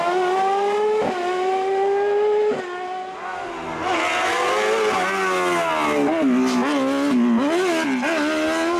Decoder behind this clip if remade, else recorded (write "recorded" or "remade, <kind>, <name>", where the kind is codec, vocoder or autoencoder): recorded